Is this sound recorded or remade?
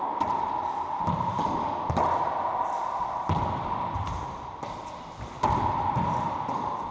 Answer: recorded